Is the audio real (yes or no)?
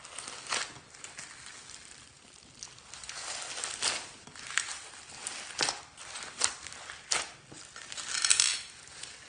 yes